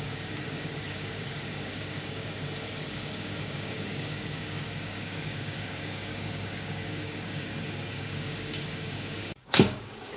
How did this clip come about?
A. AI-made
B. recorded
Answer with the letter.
A